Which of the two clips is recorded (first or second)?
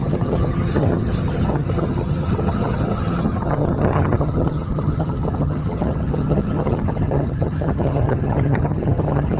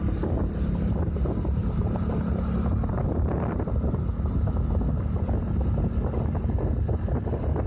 second